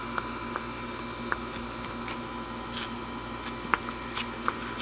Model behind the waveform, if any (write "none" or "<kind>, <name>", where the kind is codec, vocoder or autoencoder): none